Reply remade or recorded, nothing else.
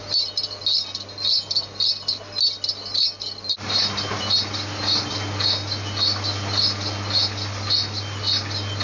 recorded